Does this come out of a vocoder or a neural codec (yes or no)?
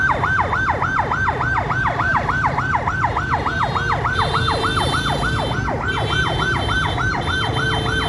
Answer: no